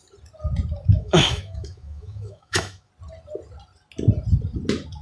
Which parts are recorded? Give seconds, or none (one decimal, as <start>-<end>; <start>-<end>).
0.0-0.9; 2.9-5.0